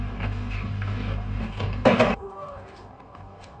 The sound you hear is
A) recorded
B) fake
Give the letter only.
B